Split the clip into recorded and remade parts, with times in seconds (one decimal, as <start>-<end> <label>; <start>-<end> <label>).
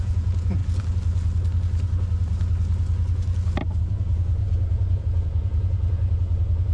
0.0-0.6 remade; 0.6-3.8 recorded; 3.8-6.7 remade